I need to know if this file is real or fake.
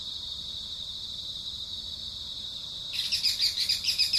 real